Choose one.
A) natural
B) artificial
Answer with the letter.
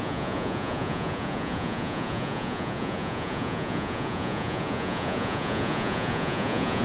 B